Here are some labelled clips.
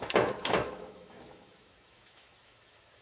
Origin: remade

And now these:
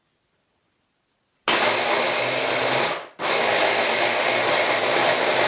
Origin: recorded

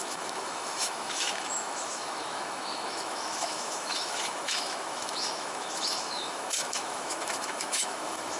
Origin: remade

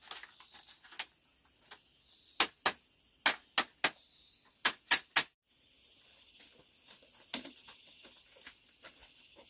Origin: recorded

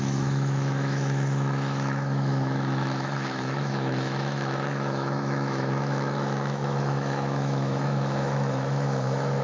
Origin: remade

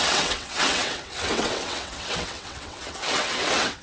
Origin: remade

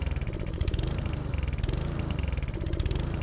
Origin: remade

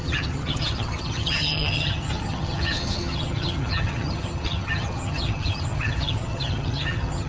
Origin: remade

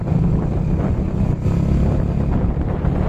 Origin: recorded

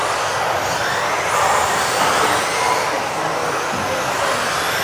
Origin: recorded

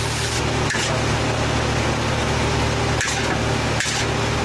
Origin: recorded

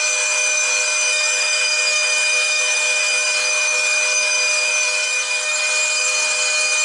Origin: remade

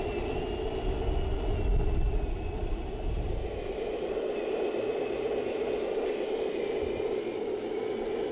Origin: recorded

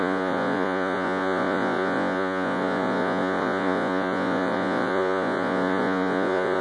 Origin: remade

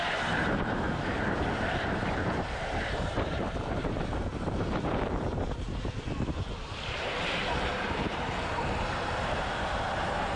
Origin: remade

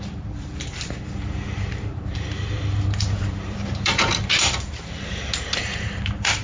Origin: remade